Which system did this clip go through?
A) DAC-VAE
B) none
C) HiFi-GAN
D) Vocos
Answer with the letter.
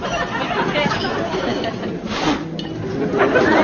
B